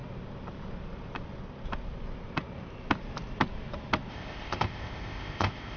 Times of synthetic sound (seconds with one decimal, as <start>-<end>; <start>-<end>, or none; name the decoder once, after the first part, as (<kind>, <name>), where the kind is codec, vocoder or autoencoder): 4.1-5.8 (codec, ZipCodec)